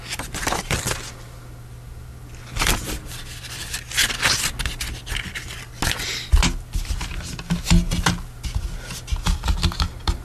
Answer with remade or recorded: recorded